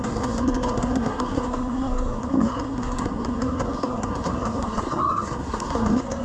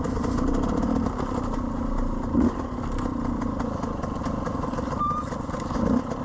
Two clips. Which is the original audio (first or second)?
second